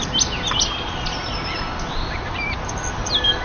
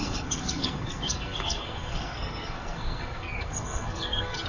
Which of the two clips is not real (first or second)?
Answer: second